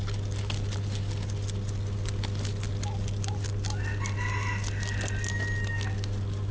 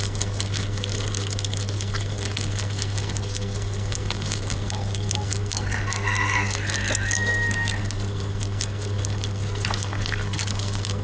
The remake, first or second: second